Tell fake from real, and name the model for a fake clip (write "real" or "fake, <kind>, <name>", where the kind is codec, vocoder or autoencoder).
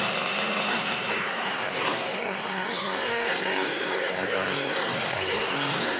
fake, codec, SNAC